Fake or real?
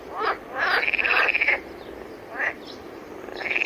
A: fake